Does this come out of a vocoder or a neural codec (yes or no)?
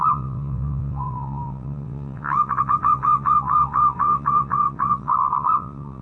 yes